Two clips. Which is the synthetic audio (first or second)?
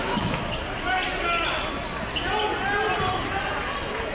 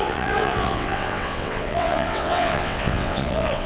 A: second